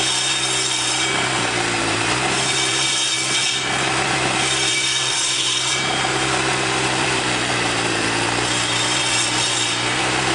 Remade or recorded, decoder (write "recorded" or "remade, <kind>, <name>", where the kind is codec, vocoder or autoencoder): remade, vocoder, BigVGAN v2